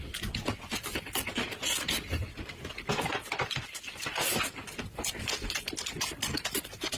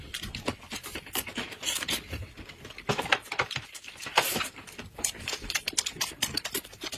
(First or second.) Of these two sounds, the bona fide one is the first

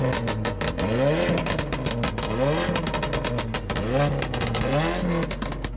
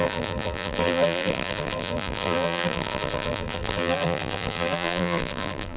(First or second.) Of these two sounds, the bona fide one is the first